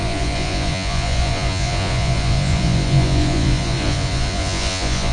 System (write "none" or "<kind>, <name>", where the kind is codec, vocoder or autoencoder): vocoder, Vocos